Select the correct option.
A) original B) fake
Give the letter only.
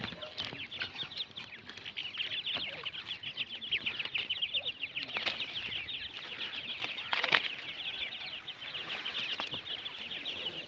A